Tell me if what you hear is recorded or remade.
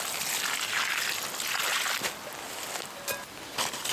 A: recorded